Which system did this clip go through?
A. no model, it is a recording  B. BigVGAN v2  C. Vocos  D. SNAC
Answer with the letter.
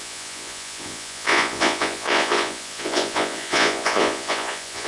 C